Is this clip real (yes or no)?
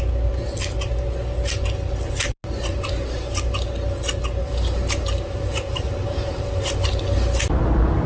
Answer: yes